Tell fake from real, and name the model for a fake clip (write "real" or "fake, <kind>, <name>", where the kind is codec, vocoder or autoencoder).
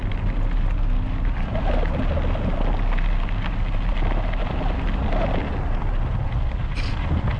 real